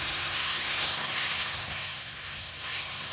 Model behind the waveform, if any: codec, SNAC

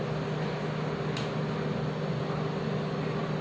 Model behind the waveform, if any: none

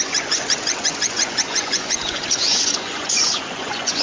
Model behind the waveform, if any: vocoder, Vocos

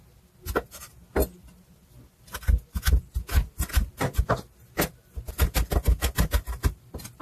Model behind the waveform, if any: none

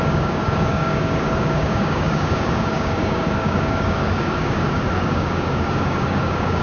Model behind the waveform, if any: codec, DAC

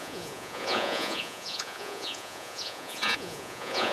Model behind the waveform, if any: vocoder, Vocos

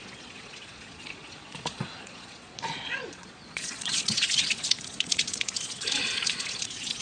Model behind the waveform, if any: vocoder, Vocos